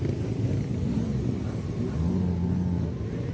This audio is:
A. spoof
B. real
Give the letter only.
B